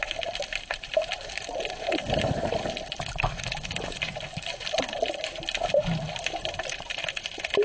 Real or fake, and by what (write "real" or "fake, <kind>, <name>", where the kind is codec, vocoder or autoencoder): fake, vocoder, BigVGAN v2